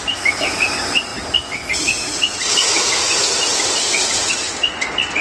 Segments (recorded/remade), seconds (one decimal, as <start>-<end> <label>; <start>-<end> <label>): 0.0-5.2 recorded